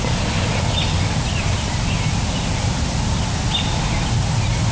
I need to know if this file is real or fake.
real